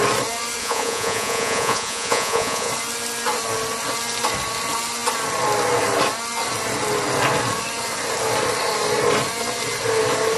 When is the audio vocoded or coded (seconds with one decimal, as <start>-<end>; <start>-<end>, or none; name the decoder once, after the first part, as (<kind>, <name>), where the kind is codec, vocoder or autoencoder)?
0.6-2.7 (vocoder, Vocos)